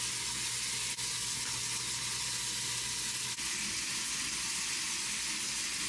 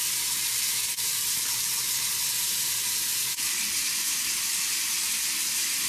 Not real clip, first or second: second